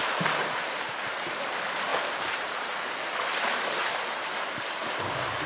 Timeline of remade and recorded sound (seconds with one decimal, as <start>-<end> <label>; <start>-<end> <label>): 0.0-1.9 recorded; 1.9-3.6 remade; 3.6-5.5 recorded